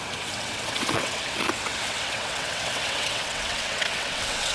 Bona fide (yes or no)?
no